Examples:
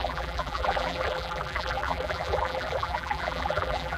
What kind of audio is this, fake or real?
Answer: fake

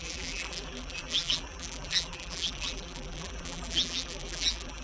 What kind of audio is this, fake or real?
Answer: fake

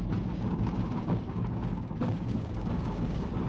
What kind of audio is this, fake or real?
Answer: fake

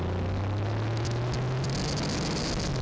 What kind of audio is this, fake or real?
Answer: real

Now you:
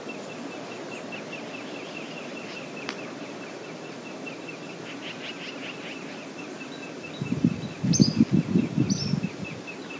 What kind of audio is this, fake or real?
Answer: real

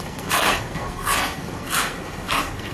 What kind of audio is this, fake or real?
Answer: fake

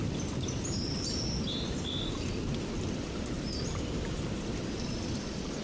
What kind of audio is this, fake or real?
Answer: real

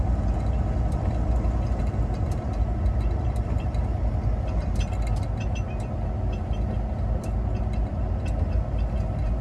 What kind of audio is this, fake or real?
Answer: real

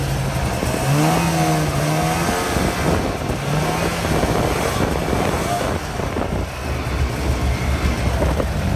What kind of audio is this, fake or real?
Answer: real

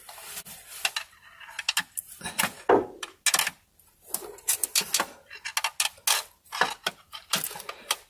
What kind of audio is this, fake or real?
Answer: real